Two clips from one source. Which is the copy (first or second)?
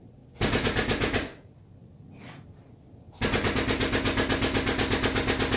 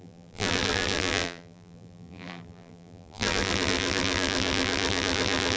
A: second